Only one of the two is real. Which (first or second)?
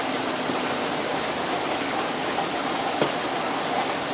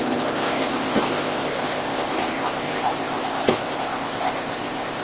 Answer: first